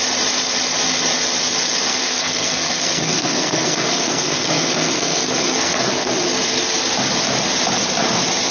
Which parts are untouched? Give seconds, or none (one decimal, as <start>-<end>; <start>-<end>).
0.0-1.9; 6.1-8.5